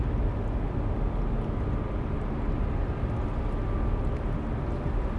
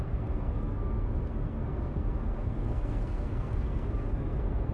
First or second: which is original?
first